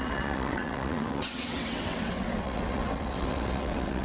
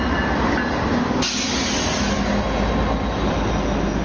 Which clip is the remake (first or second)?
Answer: first